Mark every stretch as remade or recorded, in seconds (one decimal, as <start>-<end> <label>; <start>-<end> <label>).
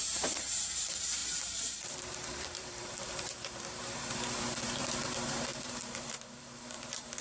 0.0-7.2 remade